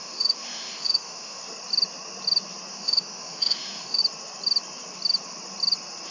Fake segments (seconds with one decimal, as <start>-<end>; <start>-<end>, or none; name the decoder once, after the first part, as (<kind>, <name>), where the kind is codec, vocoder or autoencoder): 0.0-1.4 (autoencoder, DAC-VAE); 2.7-4.0